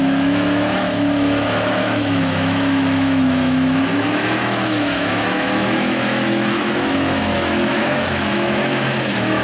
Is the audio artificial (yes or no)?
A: yes